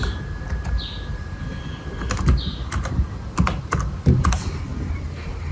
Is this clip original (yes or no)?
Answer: yes